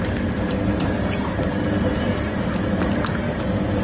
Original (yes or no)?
yes